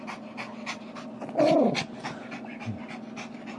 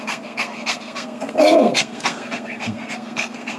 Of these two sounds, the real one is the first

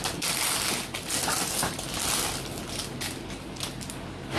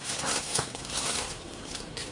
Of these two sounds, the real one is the first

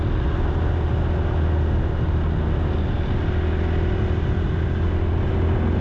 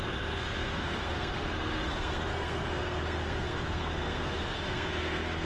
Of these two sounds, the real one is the first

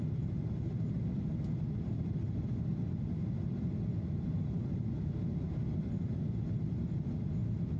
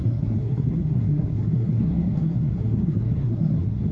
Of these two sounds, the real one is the first